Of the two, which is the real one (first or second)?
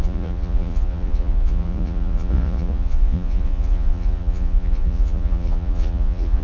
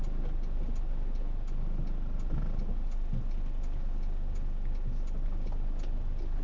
second